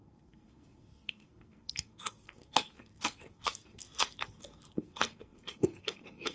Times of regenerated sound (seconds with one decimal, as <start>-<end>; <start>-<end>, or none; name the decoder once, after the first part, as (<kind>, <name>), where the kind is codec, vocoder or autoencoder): 0.0-6.3 (codec, SNAC)